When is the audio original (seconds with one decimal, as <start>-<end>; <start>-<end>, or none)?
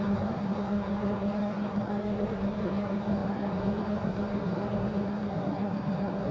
none